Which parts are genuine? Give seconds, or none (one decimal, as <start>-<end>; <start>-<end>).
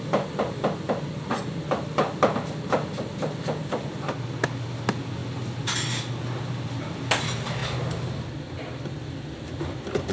0.0-10.1